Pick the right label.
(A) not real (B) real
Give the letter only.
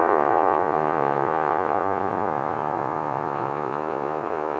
A